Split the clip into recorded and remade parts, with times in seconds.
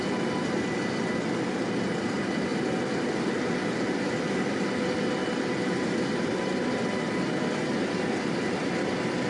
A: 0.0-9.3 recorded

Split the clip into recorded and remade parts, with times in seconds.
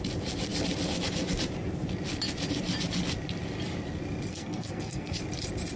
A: 0.0-4.3 recorded; 4.3-5.2 remade; 5.2-5.8 recorded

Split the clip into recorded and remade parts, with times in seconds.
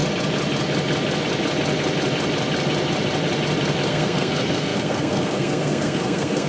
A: 0.0-3.9 recorded; 3.9-6.5 remade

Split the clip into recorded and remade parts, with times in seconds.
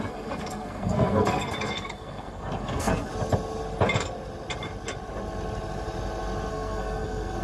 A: 0.0-3.1 remade; 3.1-6.5 recorded; 6.5-7.4 remade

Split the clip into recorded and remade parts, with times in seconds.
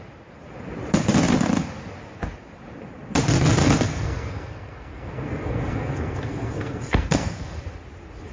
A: 0.0-3.6 recorded; 3.6-7.6 remade; 7.6-8.3 recorded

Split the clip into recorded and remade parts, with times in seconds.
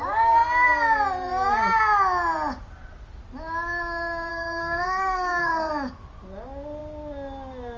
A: 0.0-4.3 recorded; 4.3-5.7 remade; 5.7-7.8 recorded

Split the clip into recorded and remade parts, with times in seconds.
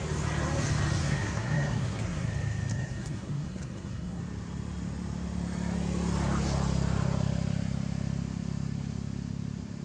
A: 0.0-1.0 recorded; 1.0-2.3 remade; 2.3-2.7 recorded; 2.7-4.2 remade; 4.2-9.8 recorded